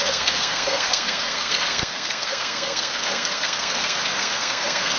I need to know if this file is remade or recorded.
remade